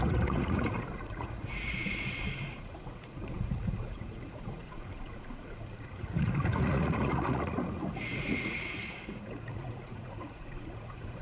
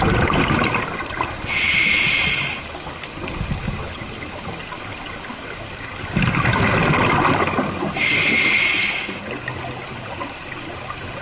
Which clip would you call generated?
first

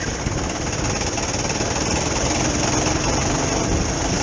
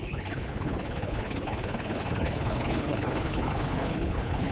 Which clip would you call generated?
second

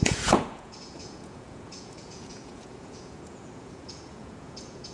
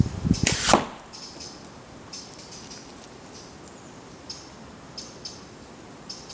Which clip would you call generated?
first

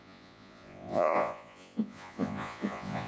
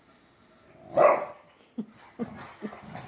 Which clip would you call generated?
first